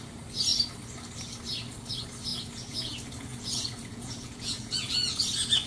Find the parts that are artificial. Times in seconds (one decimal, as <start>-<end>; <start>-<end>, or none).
2.3-2.9; 3.3-5.2